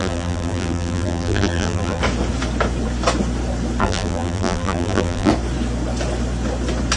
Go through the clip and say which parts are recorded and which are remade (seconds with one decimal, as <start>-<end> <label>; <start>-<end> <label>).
0.0-2.0 remade; 2.0-3.8 recorded; 3.8-5.3 remade; 5.3-7.0 recorded